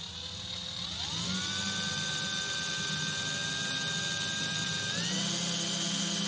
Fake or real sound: real